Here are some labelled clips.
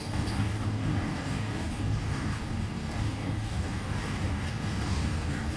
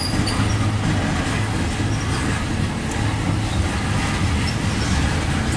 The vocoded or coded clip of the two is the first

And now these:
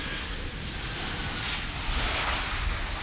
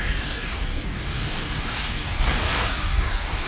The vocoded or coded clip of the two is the second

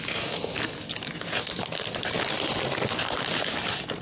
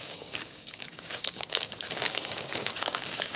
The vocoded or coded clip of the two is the second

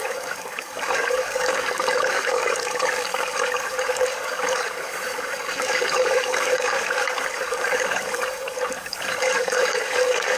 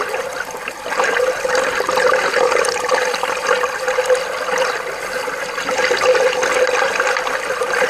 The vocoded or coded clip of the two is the first